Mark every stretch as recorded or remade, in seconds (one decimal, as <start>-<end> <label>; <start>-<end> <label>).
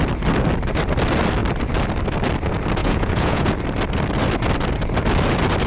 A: 0.0-2.8 recorded; 2.8-3.5 remade; 3.5-5.7 recorded